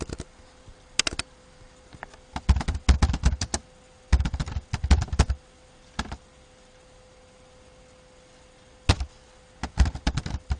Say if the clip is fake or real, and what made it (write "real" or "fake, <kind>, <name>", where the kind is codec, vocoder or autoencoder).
real